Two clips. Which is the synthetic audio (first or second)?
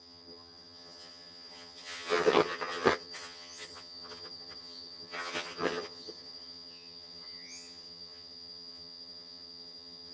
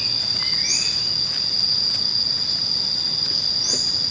first